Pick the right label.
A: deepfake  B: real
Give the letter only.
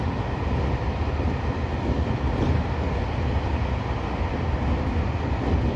B